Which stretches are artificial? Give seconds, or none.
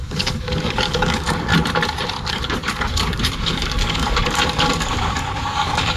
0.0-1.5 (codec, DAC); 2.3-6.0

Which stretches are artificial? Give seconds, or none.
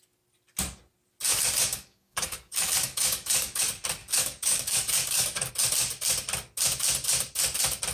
1.3-3.6 (codec, DAC); 4.0-5.5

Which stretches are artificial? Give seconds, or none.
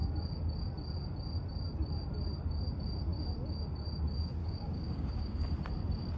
4.4-5.4 (codec, DAC)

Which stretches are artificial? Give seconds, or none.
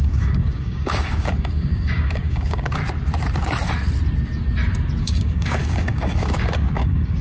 0.0-2.8 (codec, DAC); 5.0-7.2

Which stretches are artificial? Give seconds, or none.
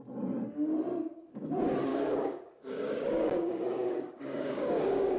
1.9-5.2 (codec, DAC)